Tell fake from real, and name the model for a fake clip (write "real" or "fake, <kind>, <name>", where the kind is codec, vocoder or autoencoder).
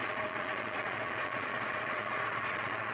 fake, vocoder, Vocos